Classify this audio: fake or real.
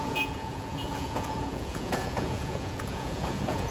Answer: fake